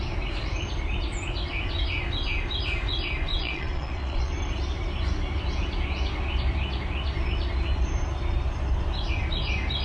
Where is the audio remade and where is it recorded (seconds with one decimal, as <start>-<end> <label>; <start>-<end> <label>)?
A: 0.0-3.3 recorded; 3.3-4.3 remade; 4.3-9.8 recorded

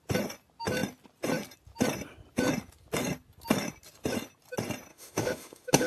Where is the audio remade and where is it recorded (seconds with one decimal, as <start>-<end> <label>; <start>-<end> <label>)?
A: 0.0-4.9 recorded; 4.9-5.9 remade

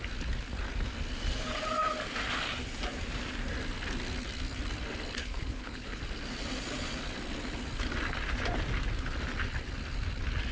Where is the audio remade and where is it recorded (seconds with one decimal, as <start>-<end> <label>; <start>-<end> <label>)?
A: 0.0-5.2 recorded; 5.2-6.0 remade; 6.0-10.5 recorded

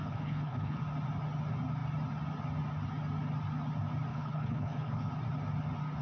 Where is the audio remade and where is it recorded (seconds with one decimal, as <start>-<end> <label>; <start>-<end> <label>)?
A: 0.0-0.8 remade; 0.8-4.1 recorded; 4.1-5.1 remade; 5.1-6.0 recorded

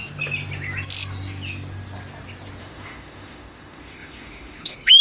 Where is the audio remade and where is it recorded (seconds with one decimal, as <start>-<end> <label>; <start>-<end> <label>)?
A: 0.0-2.6 recorded; 2.6-5.0 remade